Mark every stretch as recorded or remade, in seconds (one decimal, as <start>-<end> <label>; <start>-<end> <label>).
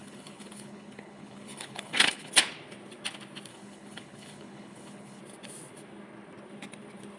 0.0-2.3 remade; 2.3-3.5 recorded; 3.5-5.2 remade; 5.2-7.2 recorded